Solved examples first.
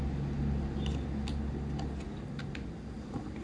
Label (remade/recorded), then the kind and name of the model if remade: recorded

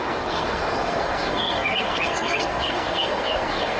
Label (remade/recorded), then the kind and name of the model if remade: remade, codec, SNAC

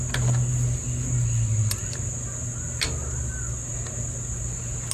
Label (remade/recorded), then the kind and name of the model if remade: recorded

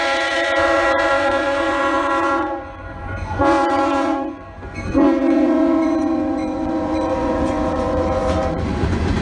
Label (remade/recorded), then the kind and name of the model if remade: remade, vocoder, Vocos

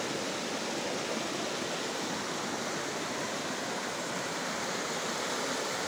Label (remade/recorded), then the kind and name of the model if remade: recorded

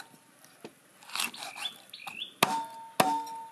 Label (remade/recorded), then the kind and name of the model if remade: recorded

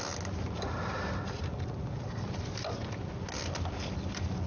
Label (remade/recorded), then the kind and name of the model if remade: recorded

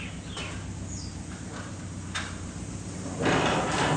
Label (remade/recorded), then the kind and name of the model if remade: recorded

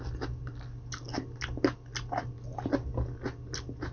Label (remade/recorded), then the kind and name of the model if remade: recorded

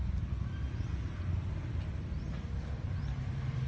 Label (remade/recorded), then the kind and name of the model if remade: recorded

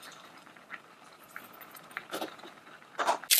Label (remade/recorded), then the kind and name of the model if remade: recorded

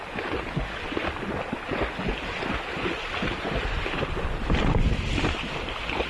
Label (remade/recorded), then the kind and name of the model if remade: recorded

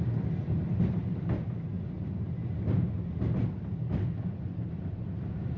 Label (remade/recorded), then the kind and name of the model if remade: recorded